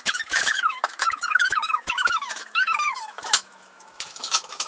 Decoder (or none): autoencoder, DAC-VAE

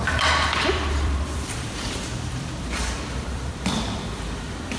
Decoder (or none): vocoder, BigVGAN v2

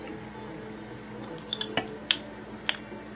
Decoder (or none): none